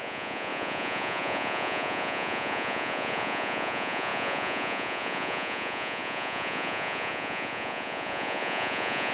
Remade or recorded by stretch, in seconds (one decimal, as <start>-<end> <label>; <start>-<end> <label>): 0.0-9.1 remade